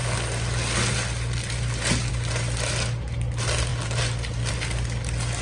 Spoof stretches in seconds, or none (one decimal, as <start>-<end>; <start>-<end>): none